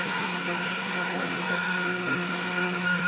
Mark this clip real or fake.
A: fake